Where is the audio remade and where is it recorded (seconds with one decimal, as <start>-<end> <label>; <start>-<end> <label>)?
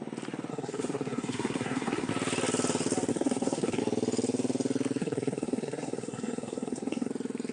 0.0-0.5 recorded; 0.5-2.1 remade; 2.1-3.1 recorded; 3.1-3.8 remade; 3.8-5.0 recorded; 5.0-7.1 remade; 7.1-7.5 recorded